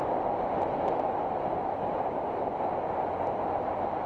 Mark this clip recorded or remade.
recorded